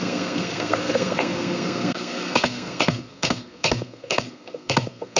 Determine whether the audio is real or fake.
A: fake